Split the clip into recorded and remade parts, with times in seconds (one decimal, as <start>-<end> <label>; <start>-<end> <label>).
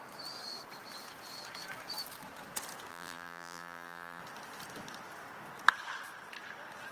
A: 0.0-2.9 recorded; 2.9-4.2 remade; 4.2-6.9 recorded